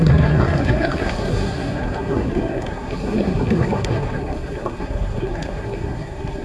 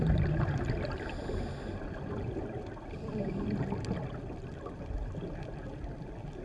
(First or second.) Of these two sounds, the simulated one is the first